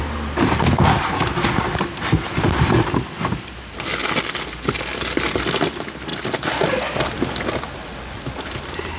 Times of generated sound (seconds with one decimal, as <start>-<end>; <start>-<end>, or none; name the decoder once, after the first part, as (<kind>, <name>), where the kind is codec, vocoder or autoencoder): none